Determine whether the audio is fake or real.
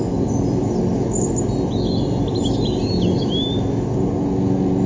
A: real